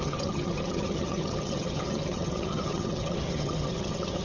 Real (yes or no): no